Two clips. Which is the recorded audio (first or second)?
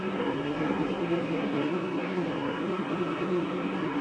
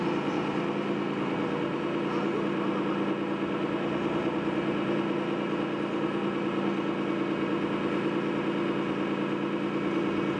second